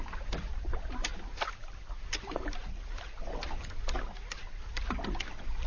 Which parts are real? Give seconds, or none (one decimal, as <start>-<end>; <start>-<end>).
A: 0.0-5.7